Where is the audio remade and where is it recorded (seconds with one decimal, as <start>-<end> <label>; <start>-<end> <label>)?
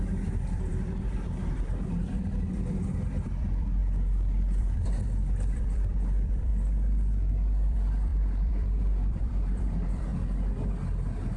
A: 0.0-3.8 remade; 3.8-4.6 recorded; 4.6-6.5 remade; 6.5-7.3 recorded; 7.3-10.1 remade; 10.1-11.4 recorded